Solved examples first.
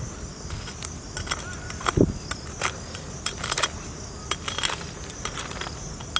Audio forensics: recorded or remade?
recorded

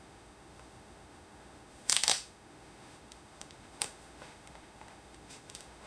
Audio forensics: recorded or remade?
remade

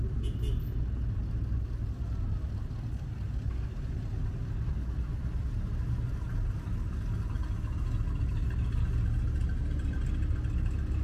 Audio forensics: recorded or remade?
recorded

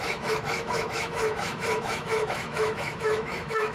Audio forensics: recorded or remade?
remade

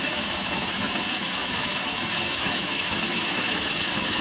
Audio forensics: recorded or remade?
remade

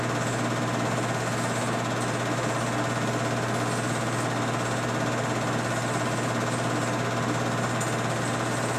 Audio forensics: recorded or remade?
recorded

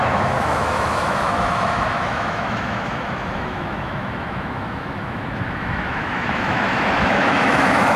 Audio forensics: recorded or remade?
remade